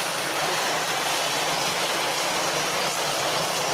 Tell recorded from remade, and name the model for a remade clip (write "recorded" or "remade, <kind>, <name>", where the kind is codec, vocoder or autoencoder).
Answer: recorded